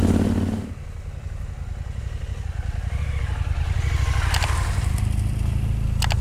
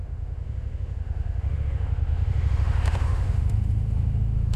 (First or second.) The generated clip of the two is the second